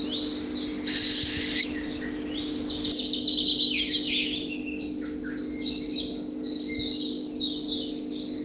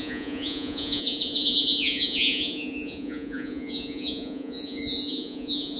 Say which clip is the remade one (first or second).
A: second